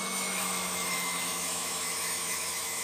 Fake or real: fake